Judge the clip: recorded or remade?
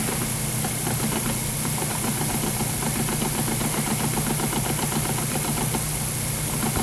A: recorded